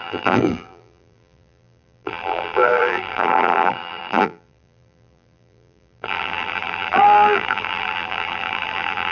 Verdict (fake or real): fake